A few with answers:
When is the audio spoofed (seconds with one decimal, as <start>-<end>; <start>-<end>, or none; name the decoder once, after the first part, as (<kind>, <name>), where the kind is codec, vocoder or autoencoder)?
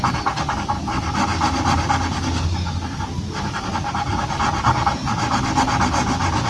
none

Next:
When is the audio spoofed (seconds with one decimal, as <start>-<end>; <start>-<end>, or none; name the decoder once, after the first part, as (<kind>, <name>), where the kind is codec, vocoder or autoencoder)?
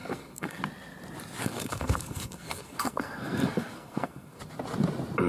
0.0-0.6 (codec, SNAC); 1.4-4.4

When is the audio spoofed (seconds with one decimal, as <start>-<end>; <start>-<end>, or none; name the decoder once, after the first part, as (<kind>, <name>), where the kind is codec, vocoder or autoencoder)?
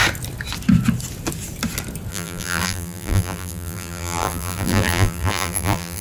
2.1-6.0 (vocoder, BigVGAN v2)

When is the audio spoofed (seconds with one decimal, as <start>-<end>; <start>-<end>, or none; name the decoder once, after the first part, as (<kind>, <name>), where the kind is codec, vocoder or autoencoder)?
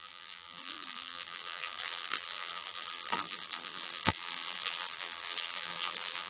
0.0-6.3 (vocoder, BigVGAN v2)